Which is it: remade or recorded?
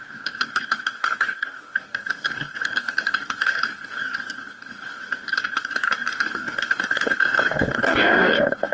remade